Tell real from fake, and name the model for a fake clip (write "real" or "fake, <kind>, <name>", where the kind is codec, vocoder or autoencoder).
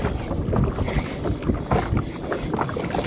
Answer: real